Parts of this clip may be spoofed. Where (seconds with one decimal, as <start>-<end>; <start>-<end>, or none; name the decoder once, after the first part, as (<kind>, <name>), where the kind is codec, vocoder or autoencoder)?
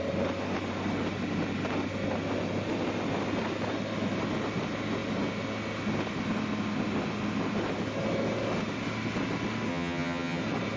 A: 9.7-10.4 (vocoder, HiFi-GAN)